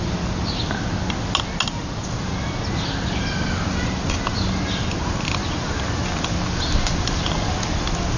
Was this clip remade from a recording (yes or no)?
no